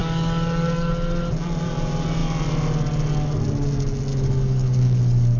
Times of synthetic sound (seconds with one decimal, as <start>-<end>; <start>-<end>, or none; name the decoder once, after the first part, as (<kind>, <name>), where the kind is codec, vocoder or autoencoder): 0.0-0.9 (codec, DAC); 4.1-5.4